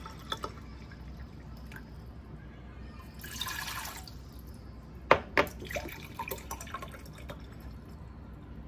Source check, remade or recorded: recorded